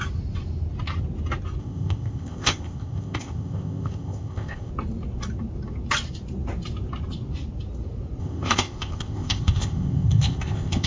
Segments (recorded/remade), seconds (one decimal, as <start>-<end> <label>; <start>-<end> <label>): 0.0-1.6 recorded; 1.6-4.7 remade; 4.7-8.2 recorded; 8.2-10.9 remade